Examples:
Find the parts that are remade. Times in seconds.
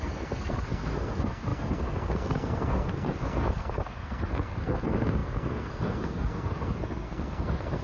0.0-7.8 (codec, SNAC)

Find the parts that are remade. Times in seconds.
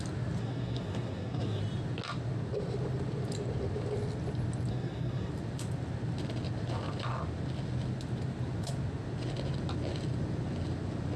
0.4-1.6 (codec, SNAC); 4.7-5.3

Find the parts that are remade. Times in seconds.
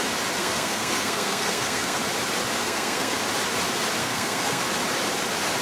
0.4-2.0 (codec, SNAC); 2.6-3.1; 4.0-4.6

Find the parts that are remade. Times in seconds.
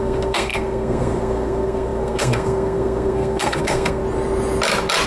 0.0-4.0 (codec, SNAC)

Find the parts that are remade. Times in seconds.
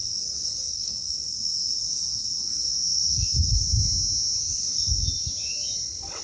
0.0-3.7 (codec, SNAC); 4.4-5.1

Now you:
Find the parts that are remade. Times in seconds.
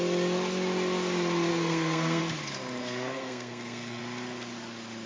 1.5-2.2 (codec, SNAC); 2.8-4.0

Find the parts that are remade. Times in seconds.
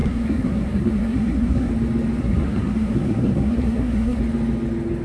0.0-1.7 (codec, SNAC); 2.2-4.2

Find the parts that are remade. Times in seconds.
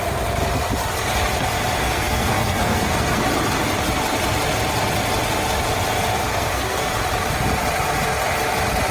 1.8-3.2 (codec, SNAC); 6.1-6.9